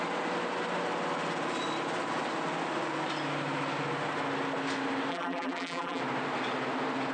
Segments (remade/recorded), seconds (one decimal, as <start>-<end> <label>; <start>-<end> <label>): 0.0-5.1 recorded; 5.1-6.0 remade; 6.0-7.1 recorded